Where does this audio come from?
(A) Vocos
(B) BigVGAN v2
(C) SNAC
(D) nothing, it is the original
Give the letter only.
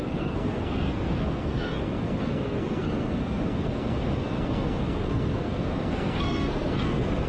C